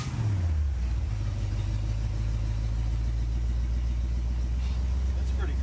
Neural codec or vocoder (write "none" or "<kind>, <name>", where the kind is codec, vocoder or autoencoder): none